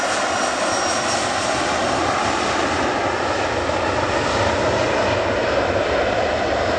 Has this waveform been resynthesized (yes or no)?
no